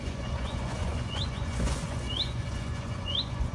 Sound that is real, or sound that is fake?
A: fake